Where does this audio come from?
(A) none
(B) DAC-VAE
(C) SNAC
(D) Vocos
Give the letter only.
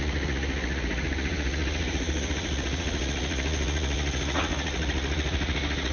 D